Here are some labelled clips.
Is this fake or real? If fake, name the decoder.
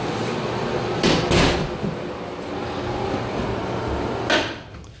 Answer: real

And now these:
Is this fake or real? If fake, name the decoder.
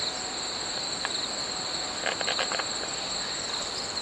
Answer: real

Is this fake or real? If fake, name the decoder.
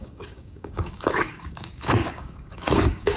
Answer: fake, codec, DAC